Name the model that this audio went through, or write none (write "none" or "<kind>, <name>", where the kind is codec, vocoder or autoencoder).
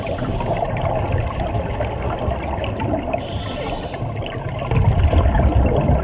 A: none